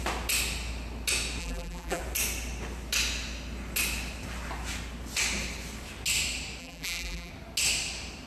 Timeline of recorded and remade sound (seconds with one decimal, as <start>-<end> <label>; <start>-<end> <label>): 0.0-1.4 recorded; 1.4-2.0 remade; 2.0-6.6 recorded; 6.6-7.3 remade; 7.3-8.3 recorded

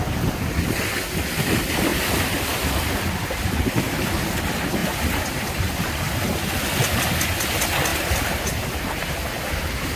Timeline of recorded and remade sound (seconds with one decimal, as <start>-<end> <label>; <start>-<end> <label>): 0.0-1.9 recorded; 1.9-2.7 remade; 2.7-4.8 recorded; 4.8-6.0 remade; 6.0-7.9 recorded; 7.9-8.6 remade; 8.6-10.0 recorded

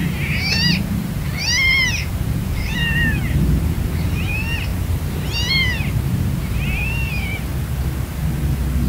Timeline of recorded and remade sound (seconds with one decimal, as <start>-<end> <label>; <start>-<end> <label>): 0.0-0.5 recorded; 0.5-4.7 remade; 4.7-5.5 recorded; 5.5-7.5 remade; 7.5-8.9 recorded

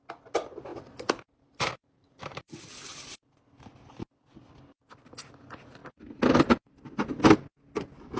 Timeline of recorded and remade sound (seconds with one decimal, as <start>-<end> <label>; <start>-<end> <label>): 0.0-0.7 recorded; 0.7-2.5 remade; 2.5-8.2 recorded

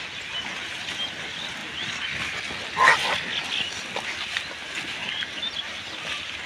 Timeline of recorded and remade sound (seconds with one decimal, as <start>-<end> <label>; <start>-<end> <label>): 0.0-1.6 recorded; 1.6-2.4 remade; 2.4-6.5 recorded

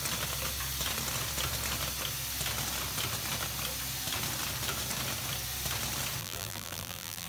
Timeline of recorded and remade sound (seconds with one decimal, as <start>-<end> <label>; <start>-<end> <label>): 0.0-6.2 recorded; 6.2-7.3 remade

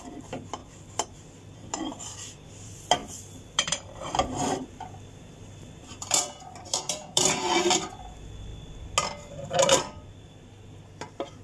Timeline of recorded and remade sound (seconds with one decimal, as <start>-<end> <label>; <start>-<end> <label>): 0.0-8.5 remade; 8.5-9.3 recorded; 9.3-11.4 remade